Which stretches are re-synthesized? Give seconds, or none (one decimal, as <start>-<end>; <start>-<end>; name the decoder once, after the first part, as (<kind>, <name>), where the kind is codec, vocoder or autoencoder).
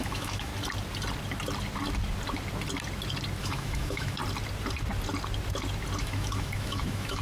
0.0-0.5 (autoencoder, DAC-VAE); 3.4-4.2; 6.0-7.2